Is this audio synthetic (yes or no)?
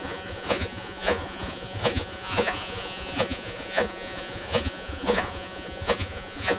yes